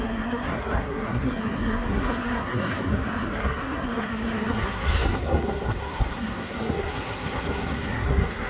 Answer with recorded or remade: remade